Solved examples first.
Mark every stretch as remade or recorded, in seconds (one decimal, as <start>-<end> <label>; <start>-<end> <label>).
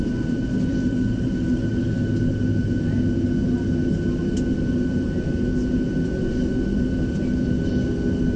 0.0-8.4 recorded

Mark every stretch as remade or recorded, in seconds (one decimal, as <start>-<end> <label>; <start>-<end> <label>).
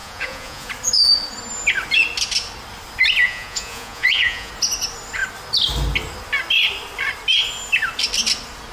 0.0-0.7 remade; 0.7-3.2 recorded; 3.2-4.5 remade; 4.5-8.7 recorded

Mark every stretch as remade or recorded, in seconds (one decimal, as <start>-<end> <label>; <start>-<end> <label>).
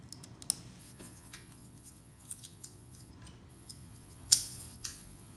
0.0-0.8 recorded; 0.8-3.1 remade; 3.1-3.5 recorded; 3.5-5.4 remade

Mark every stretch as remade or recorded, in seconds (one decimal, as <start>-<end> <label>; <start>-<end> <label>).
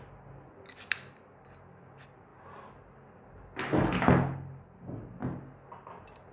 0.0-6.3 recorded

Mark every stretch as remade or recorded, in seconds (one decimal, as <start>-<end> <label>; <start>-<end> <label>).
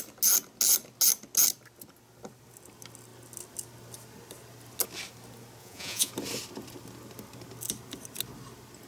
0.0-5.6 recorded; 5.6-6.1 remade; 6.1-8.9 recorded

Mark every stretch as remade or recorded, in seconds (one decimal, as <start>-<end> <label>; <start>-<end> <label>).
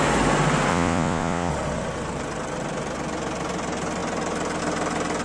0.0-0.7 recorded; 0.7-1.5 remade; 1.5-5.2 recorded